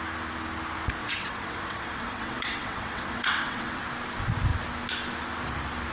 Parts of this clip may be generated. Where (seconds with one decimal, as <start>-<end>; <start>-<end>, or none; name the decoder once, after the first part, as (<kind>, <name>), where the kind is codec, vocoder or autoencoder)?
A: 1.0-3.8 (vocoder, WaveNeXt)